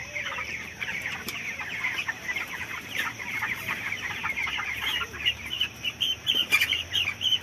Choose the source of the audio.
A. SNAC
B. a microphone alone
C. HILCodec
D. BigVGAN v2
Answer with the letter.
D